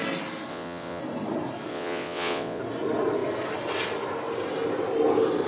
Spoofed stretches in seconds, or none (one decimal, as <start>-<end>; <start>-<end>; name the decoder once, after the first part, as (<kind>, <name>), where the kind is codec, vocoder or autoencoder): 0.5-1.0 (vocoder, WaveNeXt); 1.7-2.6